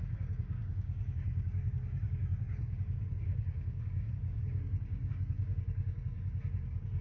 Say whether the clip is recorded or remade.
remade